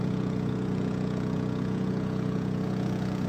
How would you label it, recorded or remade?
remade